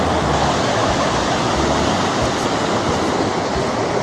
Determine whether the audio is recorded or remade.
recorded